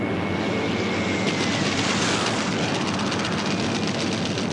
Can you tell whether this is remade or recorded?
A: recorded